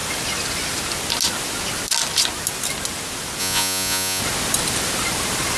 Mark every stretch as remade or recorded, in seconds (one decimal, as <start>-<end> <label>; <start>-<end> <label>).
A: 0.0-3.4 recorded; 3.4-4.2 remade; 4.2-5.6 recorded